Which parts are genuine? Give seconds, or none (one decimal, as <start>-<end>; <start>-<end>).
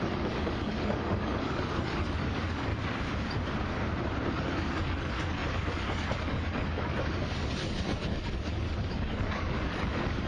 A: 2.7-4.3